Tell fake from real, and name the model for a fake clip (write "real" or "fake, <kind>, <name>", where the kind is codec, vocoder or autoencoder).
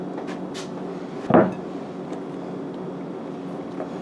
real